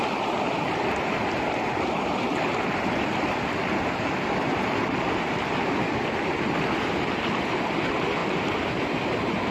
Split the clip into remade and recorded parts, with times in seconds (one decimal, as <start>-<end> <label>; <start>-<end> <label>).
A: 0.0-8.2 recorded; 8.2-8.7 remade; 8.7-9.5 recorded